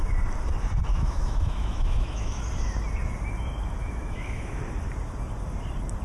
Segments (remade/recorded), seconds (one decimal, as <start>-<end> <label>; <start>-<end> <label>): 0.0-0.9 recorded; 0.9-2.4 remade; 2.4-3.8 recorded; 3.8-4.6 remade; 4.6-6.0 recorded